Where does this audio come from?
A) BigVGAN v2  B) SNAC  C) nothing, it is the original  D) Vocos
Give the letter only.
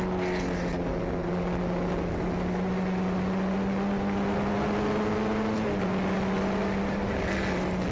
C